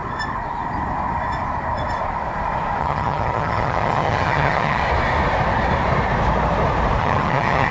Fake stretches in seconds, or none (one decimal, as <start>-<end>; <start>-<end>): 2.8-4.8; 7.0-7.7

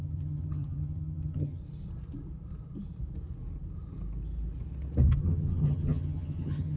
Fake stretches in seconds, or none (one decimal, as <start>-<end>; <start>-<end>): 0.0-1.6; 5.2-6.8